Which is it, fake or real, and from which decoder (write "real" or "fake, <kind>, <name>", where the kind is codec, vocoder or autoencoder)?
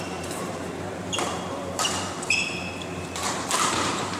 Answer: fake, vocoder, BigVGAN v2